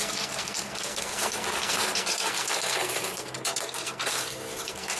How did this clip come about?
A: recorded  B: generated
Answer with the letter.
B